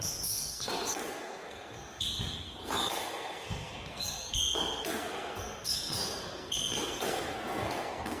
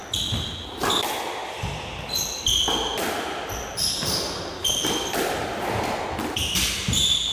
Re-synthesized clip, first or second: first